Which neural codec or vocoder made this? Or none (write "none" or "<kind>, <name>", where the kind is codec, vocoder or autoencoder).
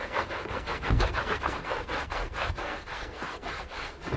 codec, SNAC